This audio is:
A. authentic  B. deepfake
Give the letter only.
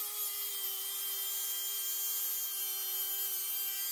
A